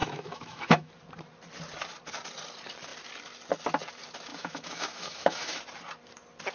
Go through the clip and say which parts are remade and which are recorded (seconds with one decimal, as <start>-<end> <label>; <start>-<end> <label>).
0.0-0.9 remade; 0.9-4.3 recorded; 4.3-5.6 remade; 5.6-6.5 recorded